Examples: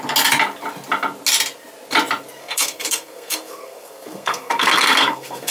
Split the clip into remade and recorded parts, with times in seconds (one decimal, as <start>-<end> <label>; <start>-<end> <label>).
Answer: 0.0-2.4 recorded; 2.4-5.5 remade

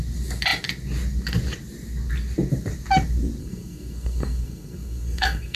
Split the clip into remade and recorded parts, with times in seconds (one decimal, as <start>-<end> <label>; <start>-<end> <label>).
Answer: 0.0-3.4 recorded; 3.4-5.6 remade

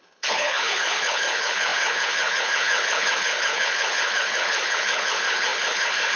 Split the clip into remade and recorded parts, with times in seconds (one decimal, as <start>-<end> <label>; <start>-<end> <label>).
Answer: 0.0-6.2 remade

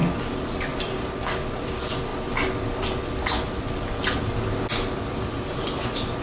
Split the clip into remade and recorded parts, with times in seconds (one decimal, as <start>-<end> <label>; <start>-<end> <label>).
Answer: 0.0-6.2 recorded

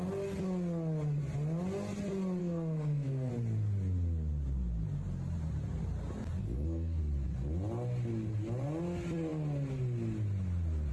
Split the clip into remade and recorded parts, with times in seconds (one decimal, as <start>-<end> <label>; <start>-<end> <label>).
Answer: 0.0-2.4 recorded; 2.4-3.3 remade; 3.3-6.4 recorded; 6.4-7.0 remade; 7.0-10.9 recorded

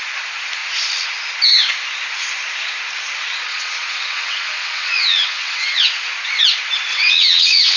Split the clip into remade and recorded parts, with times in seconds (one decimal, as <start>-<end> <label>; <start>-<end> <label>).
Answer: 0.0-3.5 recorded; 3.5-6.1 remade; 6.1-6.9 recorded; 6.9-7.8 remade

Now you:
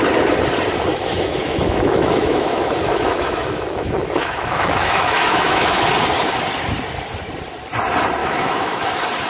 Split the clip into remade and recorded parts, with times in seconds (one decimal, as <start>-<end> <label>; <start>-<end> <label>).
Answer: 0.0-0.9 recorded; 0.9-5.8 remade; 5.8-8.2 recorded; 8.2-8.9 remade; 8.9-9.3 recorded